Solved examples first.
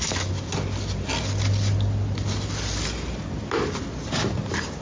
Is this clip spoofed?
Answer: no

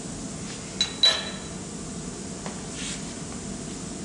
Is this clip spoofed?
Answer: no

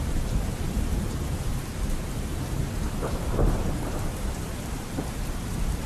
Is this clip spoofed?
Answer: yes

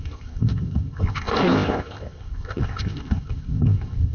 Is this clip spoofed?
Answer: yes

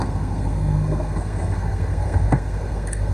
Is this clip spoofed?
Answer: yes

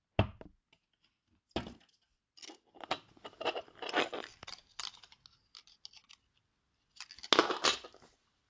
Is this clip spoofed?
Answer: no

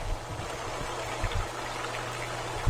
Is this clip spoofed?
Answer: no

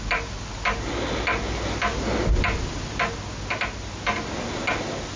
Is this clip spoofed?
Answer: no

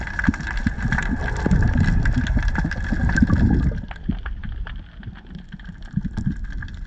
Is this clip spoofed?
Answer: no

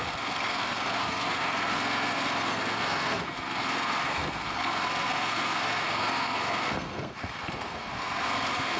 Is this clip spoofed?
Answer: yes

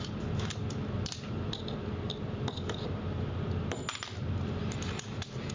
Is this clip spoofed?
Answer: no